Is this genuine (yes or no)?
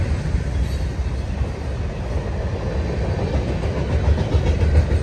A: yes